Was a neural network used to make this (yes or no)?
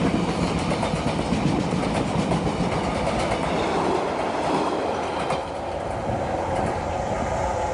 no